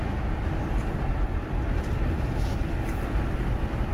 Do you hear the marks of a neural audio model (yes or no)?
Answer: no